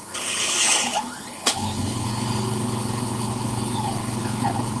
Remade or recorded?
remade